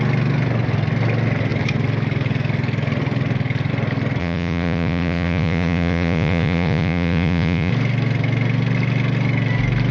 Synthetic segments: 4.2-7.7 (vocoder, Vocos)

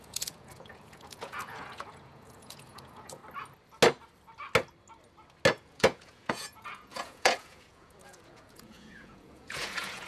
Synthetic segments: 0.0-3.2 (vocoder, Vocos); 5.6-10.1